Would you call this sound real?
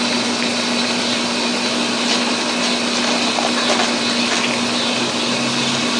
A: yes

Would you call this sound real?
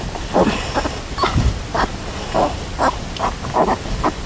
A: yes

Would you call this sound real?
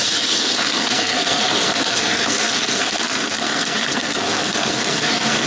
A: no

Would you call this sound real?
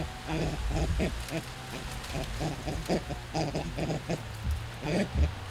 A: yes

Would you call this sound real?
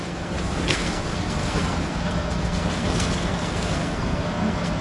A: no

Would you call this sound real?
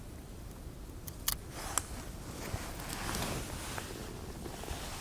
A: yes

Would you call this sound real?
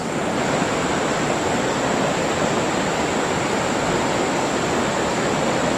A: yes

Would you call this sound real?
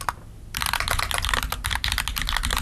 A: yes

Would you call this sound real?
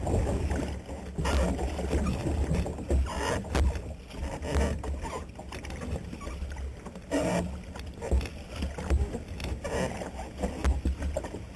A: yes